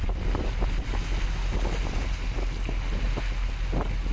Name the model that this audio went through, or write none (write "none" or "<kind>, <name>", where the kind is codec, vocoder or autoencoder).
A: none